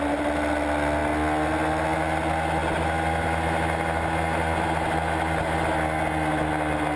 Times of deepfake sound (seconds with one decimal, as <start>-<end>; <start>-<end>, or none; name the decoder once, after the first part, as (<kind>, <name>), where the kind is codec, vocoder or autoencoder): none

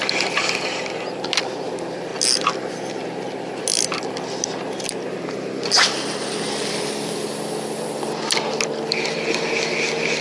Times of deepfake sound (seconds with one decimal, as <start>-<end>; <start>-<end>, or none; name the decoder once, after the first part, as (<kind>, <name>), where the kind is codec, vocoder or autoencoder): none

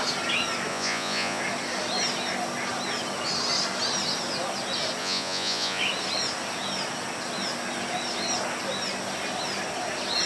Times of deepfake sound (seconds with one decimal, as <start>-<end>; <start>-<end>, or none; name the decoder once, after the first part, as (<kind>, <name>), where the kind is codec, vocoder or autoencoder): 0.7-1.4 (vocoder, Vocos); 5.0-5.8

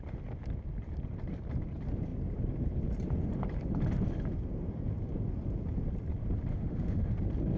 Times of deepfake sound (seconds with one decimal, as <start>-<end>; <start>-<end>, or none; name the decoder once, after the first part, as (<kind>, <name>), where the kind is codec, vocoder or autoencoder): 6.5-7.1 (autoencoder, DAC-VAE)

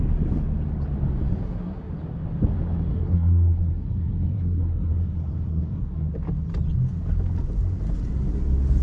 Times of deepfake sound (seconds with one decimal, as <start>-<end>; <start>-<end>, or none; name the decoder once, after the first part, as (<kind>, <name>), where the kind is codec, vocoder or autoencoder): 1.4-1.9 (codec, SNAC); 2.9-6.1

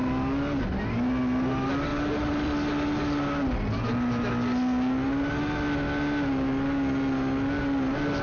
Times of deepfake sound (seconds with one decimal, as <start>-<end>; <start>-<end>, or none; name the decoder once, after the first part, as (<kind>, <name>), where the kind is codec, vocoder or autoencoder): none

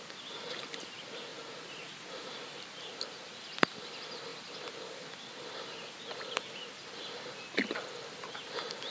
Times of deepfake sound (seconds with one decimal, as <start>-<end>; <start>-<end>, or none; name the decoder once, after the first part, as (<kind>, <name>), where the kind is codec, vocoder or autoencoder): 1.3-2.4 (vocoder, Vocos)